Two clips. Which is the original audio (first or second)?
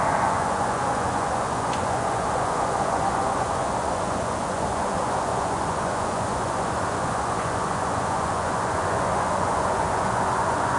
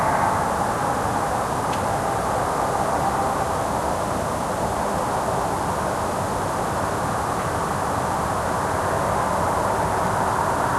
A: second